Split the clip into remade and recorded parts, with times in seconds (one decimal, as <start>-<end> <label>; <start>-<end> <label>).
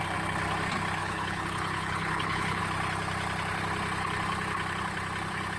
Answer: 0.0-1.0 recorded; 1.0-2.6 remade; 2.6-5.6 recorded